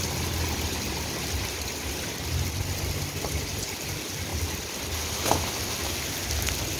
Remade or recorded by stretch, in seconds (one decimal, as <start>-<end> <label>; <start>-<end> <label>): 0.0-6.8 recorded